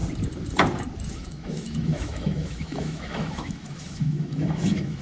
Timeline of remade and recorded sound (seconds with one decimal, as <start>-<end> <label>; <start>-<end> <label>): 0.0-1.1 recorded; 1.1-5.0 remade